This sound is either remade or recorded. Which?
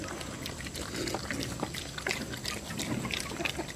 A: recorded